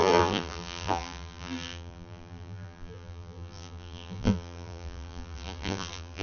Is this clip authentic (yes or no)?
no